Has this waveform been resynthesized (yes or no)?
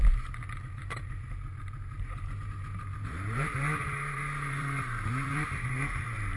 yes